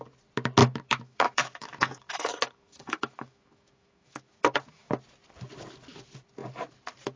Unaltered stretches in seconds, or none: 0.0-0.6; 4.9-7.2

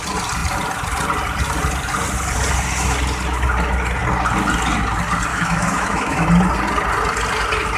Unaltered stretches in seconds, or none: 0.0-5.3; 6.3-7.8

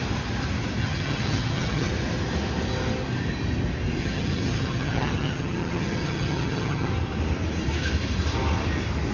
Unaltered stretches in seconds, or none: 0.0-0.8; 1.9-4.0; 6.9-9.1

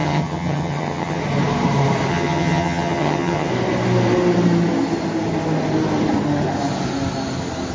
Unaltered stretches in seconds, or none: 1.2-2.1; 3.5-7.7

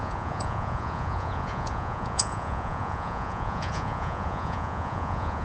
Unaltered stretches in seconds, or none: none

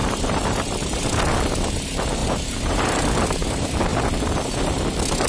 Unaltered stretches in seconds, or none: 1.0-2.2; 3.0-5.3

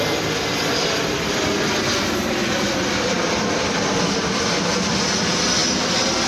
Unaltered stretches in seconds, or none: 0.0-6.3

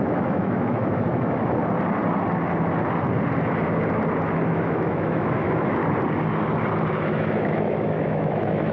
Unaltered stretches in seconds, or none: 1.6-4.5; 5.8-6.9